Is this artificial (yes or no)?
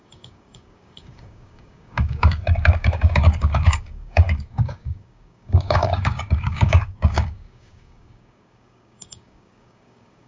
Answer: yes